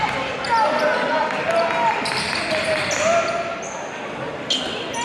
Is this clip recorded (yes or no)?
yes